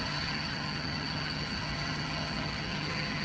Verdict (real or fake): fake